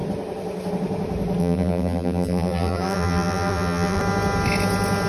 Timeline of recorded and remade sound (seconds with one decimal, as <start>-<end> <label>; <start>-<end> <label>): 0.0-1.4 recorded; 1.4-4.0 remade; 4.0-5.1 recorded